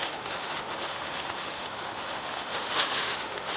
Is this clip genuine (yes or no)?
no